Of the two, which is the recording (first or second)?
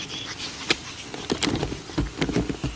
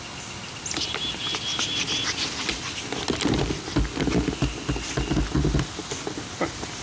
second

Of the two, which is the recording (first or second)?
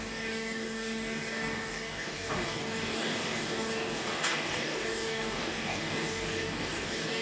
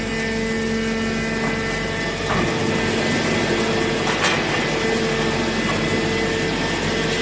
second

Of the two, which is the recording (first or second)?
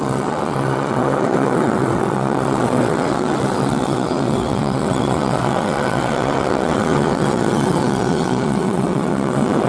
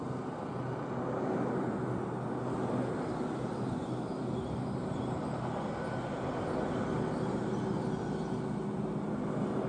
second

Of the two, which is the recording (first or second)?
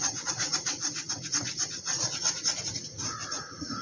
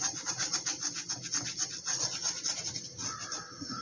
second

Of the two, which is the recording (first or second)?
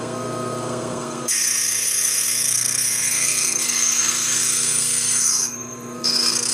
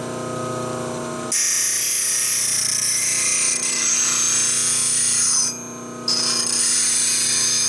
second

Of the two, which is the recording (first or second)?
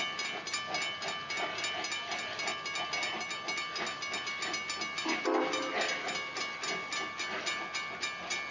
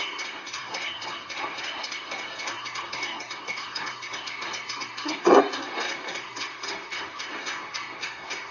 first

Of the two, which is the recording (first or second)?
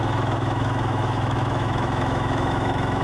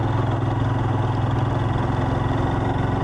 second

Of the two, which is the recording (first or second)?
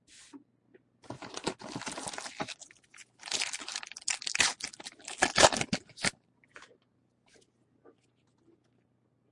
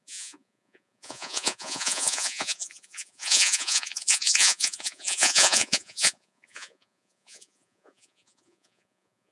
first